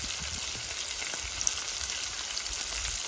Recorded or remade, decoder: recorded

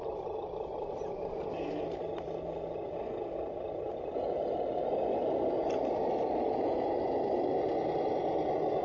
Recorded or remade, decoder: recorded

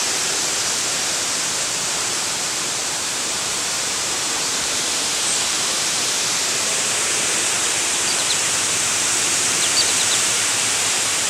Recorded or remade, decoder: remade, vocoder, BigVGAN v2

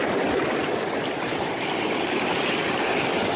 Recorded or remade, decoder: recorded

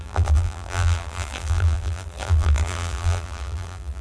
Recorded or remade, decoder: remade, vocoder, BigVGAN v2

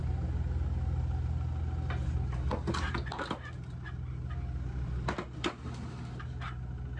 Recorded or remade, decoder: recorded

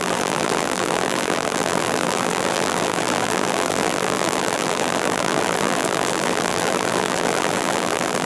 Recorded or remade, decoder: remade, vocoder, BigVGAN v2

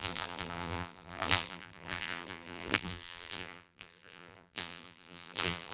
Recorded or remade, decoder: remade, vocoder, BigVGAN v2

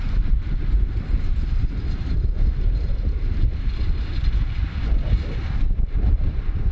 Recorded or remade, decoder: remade, vocoder, BigVGAN v2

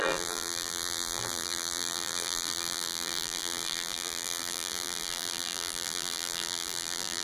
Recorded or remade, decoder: remade, vocoder, BigVGAN v2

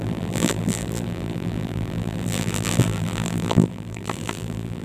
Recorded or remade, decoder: remade, vocoder, BigVGAN v2